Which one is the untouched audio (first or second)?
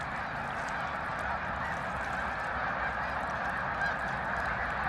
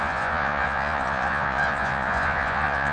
first